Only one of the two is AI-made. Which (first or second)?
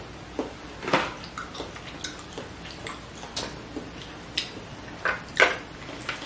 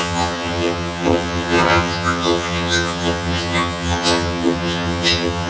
second